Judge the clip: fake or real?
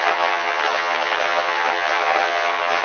fake